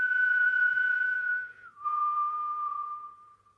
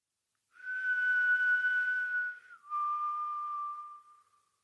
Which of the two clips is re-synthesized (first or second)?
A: first